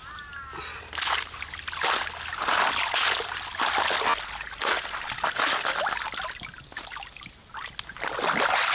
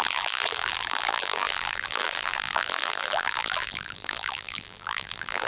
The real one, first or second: first